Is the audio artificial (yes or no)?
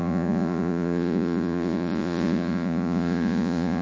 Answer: yes